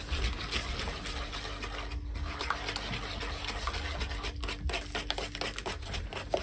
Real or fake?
real